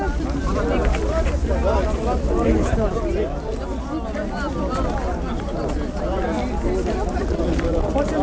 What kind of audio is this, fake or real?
real